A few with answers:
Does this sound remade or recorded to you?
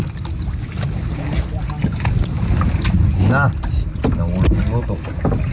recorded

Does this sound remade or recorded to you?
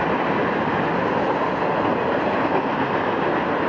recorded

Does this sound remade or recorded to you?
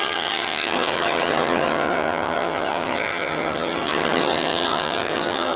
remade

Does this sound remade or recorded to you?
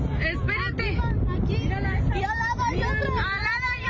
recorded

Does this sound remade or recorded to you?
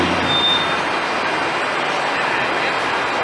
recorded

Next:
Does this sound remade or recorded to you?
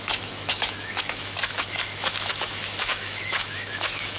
remade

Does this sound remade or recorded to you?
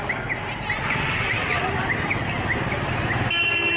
recorded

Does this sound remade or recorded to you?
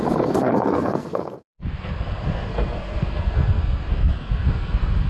remade